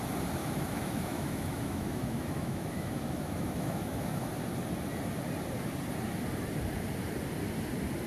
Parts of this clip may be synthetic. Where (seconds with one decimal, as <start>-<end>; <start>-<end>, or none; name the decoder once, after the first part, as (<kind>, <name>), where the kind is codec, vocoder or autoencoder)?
0.4-4.3 (autoencoder, DAC-VAE)